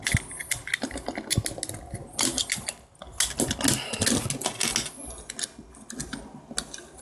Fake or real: real